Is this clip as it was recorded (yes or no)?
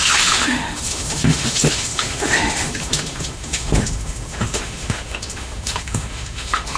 no